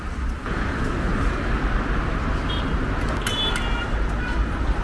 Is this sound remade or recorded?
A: recorded